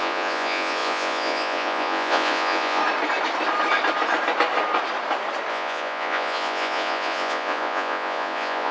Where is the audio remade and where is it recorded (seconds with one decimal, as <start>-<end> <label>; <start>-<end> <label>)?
0.0-2.8 remade; 2.8-5.5 recorded; 5.5-8.7 remade